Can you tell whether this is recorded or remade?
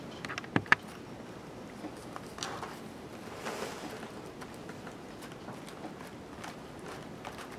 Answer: recorded